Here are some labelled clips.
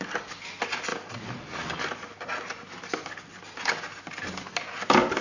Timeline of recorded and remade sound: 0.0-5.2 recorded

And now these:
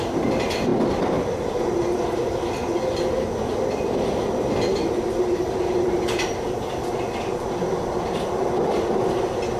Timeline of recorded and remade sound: 0.0-9.6 recorded

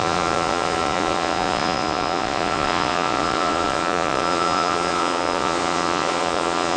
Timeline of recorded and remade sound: 0.0-6.8 remade

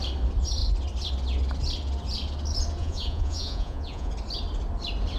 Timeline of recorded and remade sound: 0.0-2.8 recorded; 2.8-4.1 remade; 4.1-5.2 recorded

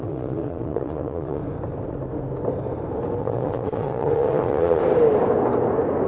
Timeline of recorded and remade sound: 0.0-1.4 remade; 1.4-3.2 recorded; 3.2-4.8 remade; 4.8-6.1 recorded